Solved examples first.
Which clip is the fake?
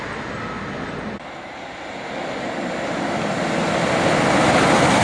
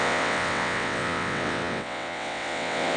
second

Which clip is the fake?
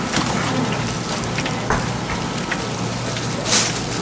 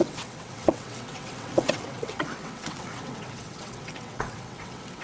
second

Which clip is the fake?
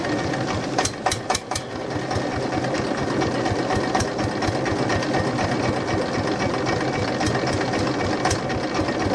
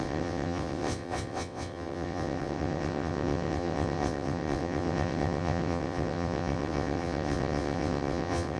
second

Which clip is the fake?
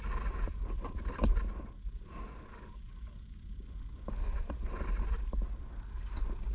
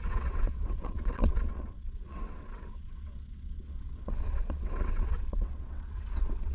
second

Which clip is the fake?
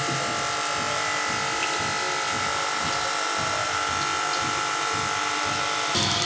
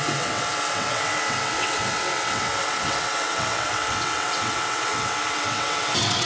second